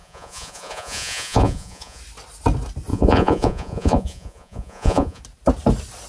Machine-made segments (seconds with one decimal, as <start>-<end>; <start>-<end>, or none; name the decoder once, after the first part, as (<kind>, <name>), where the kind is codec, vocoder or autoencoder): 0.0-2.0 (vocoder, Vocos); 2.9-5.2

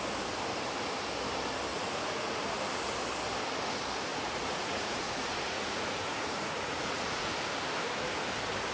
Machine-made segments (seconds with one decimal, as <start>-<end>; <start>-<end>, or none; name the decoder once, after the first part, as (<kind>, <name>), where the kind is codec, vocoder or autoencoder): 1.7-2.4 (vocoder, Vocos); 4.1-7.3

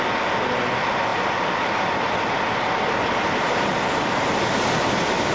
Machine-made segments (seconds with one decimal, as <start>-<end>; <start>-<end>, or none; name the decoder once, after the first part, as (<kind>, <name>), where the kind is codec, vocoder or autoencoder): none

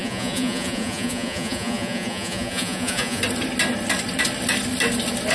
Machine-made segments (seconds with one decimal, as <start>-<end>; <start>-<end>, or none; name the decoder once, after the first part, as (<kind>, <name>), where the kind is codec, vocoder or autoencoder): 0.0-3.2 (vocoder, Vocos)

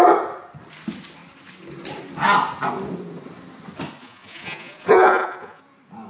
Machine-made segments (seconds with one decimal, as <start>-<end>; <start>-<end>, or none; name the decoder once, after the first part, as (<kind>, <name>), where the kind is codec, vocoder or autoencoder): 4.0-5.6 (vocoder, Vocos)

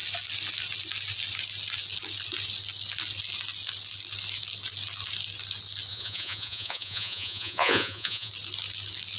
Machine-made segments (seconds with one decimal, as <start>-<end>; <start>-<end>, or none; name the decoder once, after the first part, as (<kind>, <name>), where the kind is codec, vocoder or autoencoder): 5.9-8.3 (vocoder, Vocos)

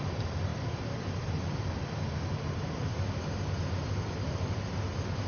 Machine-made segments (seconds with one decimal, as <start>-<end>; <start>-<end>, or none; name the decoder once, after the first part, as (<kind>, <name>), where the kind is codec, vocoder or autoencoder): none